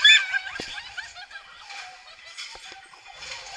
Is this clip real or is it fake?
real